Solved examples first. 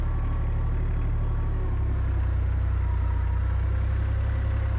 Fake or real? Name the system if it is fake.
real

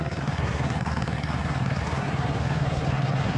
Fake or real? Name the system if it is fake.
fake, codec, SNAC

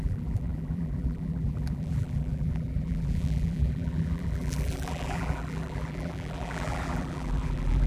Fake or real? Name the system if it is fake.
fake, vocoder, BigVGAN v2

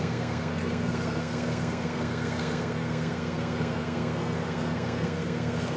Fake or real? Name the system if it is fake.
fake, codec, SNAC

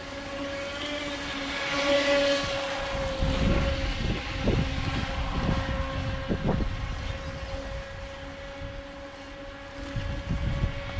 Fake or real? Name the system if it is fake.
real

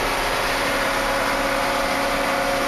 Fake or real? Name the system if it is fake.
real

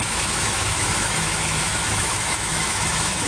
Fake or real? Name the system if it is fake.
fake, autoencoder, DAC-VAE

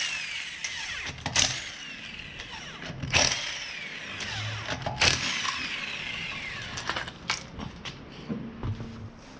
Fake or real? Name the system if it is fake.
real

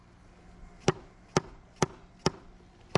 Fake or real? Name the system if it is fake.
real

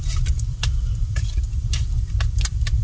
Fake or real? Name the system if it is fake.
real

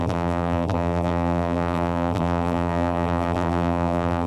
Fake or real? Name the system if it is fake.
fake, vocoder, BigVGAN v2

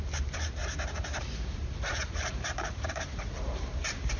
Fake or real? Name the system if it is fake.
fake, vocoder, BigVGAN v2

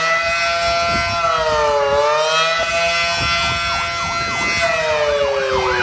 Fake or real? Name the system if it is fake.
real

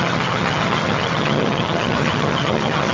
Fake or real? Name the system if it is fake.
fake, vocoder, HiFi-GAN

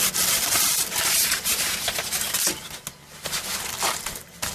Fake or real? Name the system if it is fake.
real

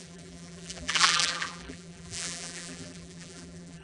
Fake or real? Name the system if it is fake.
fake, vocoder, BigVGAN v2